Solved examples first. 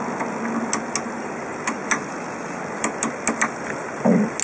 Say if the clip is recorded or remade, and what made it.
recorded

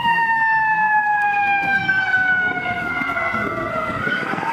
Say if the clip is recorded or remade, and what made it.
remade, codec, SNAC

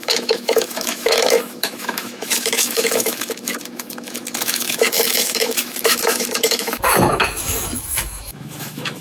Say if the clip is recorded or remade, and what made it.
remade, autoencoder, DAC-VAE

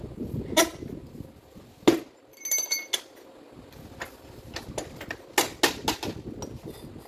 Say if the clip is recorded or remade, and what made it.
recorded